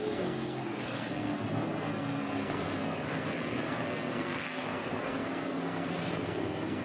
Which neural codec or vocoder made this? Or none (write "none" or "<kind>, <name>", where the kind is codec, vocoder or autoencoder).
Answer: codec, SNAC